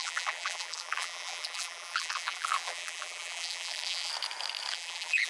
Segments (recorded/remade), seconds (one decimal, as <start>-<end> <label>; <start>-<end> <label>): 0.0-4.1 remade; 4.1-4.7 recorded; 4.7-5.3 remade